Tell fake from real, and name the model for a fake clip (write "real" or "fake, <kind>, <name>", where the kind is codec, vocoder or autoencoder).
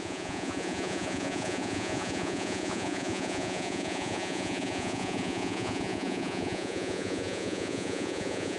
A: fake, vocoder, Vocos